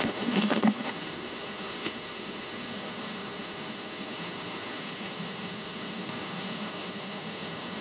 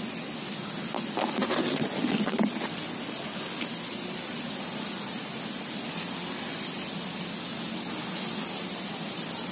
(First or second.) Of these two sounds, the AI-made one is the first